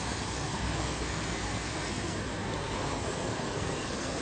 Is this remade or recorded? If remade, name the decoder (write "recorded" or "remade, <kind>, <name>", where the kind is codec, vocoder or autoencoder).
remade, codec, SNAC